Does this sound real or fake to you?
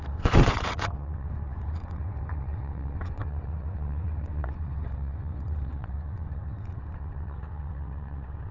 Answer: fake